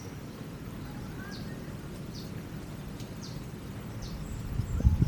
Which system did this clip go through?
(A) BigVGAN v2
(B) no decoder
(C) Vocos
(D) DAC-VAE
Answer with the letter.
A